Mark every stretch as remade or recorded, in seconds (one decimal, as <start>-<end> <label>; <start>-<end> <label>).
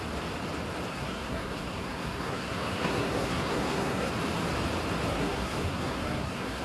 0.0-0.9 recorded; 0.9-4.1 remade; 4.1-5.1 recorded; 5.1-6.6 remade